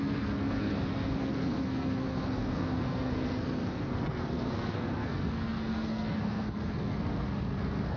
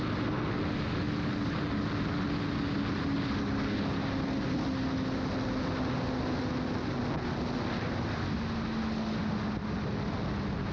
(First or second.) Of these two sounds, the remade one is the first